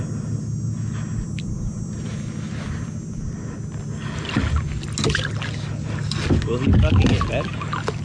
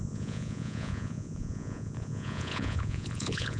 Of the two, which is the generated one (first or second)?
second